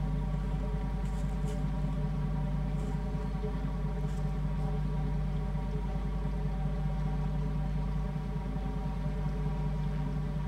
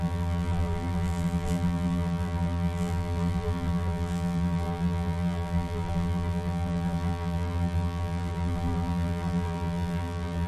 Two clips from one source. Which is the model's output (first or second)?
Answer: second